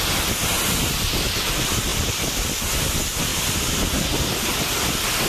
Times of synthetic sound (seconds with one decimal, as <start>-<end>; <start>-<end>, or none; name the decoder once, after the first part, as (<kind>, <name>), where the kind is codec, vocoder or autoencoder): none